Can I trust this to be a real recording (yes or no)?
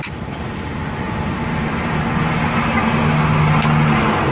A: yes